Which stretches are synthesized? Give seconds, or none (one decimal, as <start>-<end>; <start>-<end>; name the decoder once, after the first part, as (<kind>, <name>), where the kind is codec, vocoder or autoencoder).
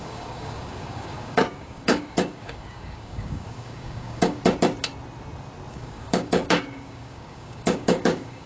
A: 0.0-4.4 (codec, DAC); 5.7-8.5